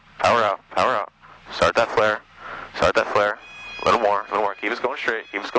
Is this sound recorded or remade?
recorded